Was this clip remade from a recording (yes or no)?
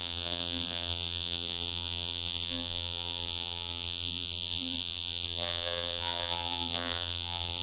yes